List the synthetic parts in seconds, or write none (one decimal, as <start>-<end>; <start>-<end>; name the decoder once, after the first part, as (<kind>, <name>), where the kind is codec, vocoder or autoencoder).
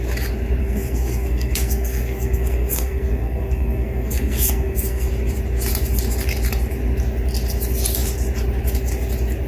0.6-5.1 (codec, SNAC)